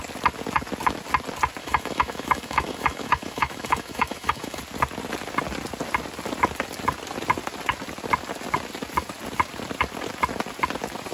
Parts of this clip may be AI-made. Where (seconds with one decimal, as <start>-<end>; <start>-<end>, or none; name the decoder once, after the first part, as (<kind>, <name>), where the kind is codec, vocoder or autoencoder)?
1.6-4.6 (autoencoder, DAC-VAE)